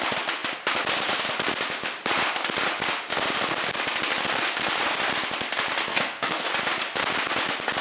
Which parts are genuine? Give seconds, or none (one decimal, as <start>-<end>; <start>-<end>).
0.0-5.9; 6.5-7.8